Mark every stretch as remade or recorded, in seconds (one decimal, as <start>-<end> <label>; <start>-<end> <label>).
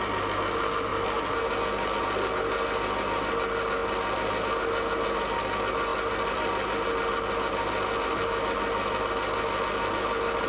0.0-10.5 recorded